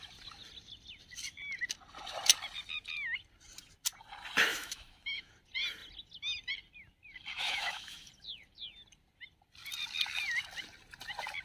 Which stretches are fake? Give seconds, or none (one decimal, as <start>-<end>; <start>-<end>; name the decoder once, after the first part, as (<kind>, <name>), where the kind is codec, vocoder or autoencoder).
4.5-5.3 (autoencoder, DAC-VAE); 7.3-8.1